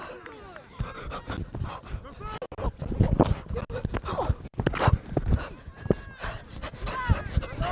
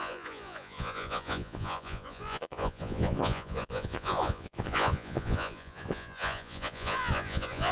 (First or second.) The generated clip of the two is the second